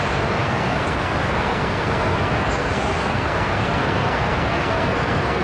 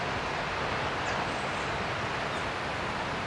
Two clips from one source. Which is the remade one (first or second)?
first